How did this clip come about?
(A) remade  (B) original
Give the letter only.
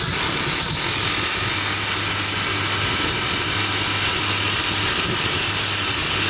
B